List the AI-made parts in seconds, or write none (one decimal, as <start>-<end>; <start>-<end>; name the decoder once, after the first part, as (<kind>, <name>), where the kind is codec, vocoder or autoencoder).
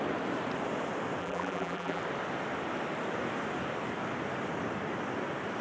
1.2-2.0 (vocoder, BigVGAN v2)